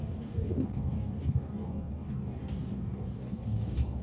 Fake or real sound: fake